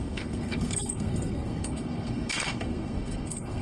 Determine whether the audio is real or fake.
fake